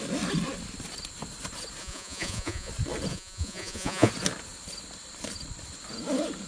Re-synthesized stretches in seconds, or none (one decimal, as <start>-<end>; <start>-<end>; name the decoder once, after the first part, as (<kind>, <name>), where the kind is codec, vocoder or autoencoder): 1.8-2.7 (vocoder, Vocos); 3.1-4.1